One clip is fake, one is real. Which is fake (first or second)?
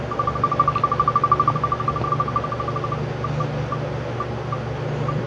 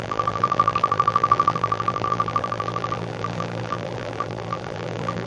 second